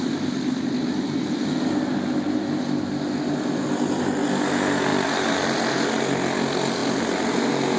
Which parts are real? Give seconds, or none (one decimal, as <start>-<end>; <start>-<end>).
0.0-4.9; 5.7-7.8